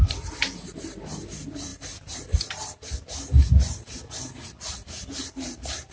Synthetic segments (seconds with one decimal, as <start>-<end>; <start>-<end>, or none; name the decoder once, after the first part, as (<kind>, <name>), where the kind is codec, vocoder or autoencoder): none